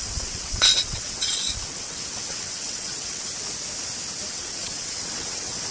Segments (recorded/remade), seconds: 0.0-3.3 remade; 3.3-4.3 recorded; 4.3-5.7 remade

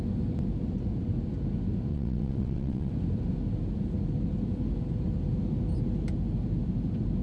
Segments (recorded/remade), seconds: 0.0-1.9 recorded; 1.9-2.9 remade; 2.9-7.2 recorded

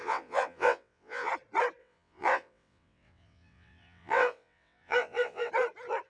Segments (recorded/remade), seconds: 0.0-1.3 remade; 1.3-1.8 recorded; 1.8-5.5 remade; 5.5-6.1 recorded